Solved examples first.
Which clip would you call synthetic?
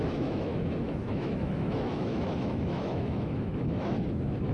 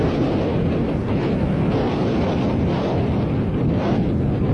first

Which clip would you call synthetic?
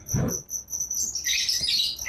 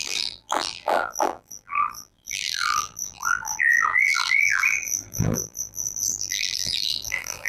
second